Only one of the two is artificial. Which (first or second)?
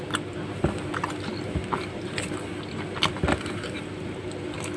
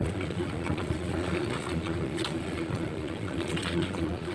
second